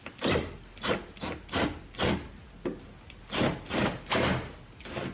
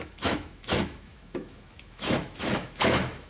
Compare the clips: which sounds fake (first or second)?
second